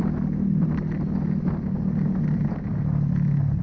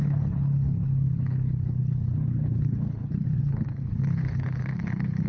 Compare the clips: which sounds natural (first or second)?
first